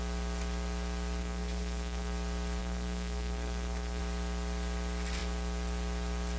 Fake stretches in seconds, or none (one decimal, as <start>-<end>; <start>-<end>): 1.2-2.1; 2.6-4.0